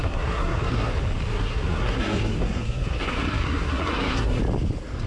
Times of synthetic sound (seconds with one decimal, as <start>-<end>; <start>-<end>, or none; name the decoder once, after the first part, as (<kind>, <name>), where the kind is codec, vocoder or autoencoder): 0.0-0.9 (codec, SNAC); 1.3-4.4